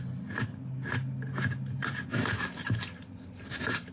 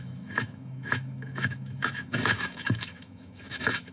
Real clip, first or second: first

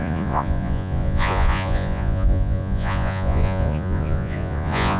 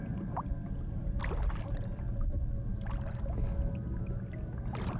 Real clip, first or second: second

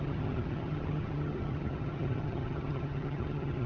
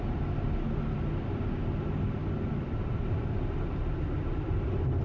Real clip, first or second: second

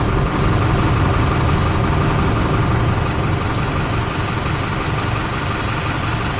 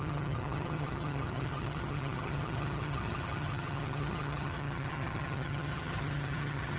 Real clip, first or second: first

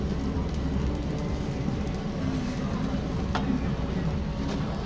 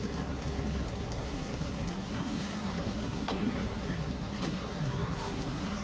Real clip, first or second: first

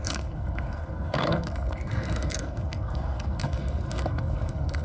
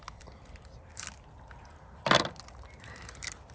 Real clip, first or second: second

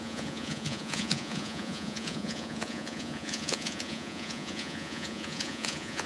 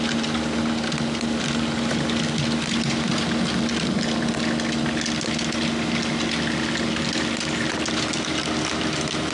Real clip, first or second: second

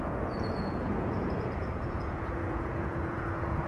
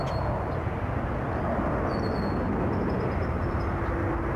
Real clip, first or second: second